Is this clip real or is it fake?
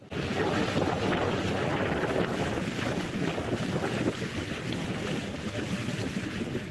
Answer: real